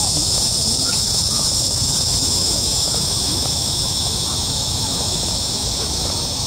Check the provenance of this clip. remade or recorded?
remade